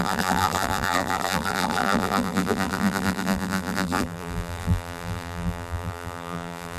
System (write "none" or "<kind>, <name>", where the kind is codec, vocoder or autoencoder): vocoder, BigVGAN v2